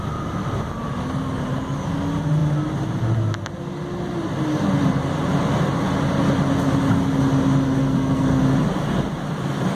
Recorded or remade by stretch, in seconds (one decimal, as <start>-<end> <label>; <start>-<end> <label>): 0.0-7.8 recorded; 7.8-8.4 remade; 8.4-9.7 recorded